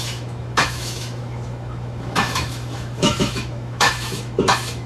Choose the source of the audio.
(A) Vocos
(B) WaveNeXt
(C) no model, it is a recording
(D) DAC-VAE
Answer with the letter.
D